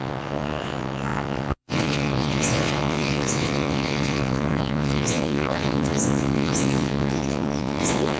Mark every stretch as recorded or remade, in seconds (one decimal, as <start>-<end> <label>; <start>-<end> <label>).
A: 0.0-8.2 remade